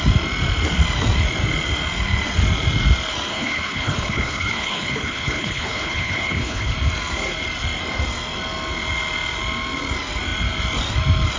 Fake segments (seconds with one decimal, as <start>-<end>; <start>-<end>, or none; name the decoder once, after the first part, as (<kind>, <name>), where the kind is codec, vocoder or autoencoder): 3.3-6.7 (codec, HILCodec)